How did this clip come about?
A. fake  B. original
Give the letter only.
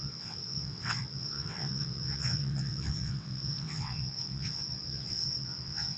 A